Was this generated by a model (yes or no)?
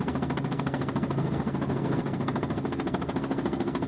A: yes